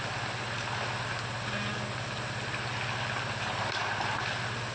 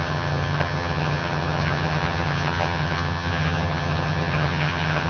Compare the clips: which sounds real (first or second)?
first